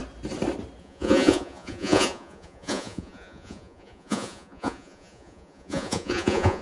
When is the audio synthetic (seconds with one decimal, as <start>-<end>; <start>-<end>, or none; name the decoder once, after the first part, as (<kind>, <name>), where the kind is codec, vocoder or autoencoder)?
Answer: 0.8-6.6 (vocoder, Vocos)